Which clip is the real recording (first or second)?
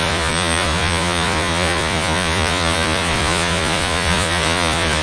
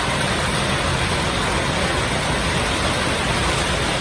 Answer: second